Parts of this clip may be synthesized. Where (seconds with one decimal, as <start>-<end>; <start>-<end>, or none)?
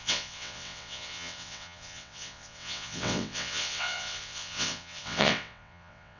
0.0-6.2